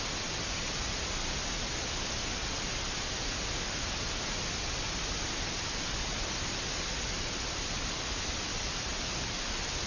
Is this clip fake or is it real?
real